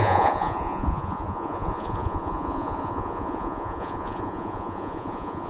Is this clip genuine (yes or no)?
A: no